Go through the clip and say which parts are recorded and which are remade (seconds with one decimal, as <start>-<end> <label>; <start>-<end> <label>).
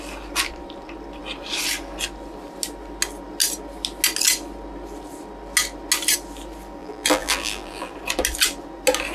0.0-6.8 recorded; 6.8-7.9 remade; 7.9-9.1 recorded